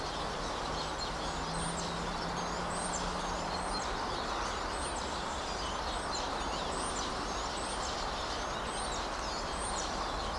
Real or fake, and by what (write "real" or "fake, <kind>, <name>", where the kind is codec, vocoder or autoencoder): real